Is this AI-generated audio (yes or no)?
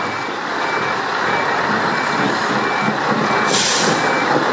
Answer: yes